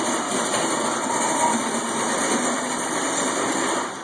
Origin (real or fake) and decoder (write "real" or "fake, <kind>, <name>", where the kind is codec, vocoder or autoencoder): real